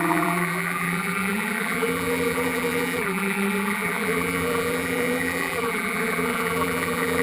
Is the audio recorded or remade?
remade